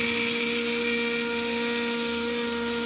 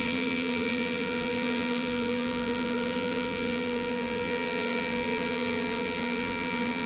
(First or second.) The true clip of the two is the first